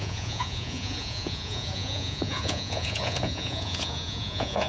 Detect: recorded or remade remade